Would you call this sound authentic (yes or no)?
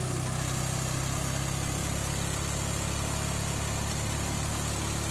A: yes